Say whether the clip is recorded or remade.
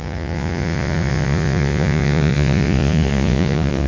remade